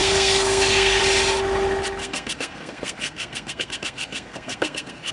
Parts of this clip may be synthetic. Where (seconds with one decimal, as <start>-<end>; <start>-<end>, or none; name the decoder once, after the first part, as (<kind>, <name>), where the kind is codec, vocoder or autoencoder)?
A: 0.0-1.0 (codec, SNAC); 2.0-5.1